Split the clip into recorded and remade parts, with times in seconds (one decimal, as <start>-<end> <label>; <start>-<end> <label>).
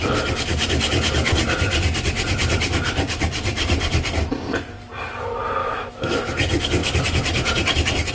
0.0-5.6 recorded; 5.6-6.3 remade; 6.3-8.1 recorded